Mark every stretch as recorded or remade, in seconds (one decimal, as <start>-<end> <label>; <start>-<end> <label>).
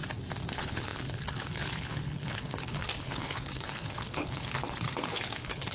0.0-0.5 recorded; 0.5-5.7 remade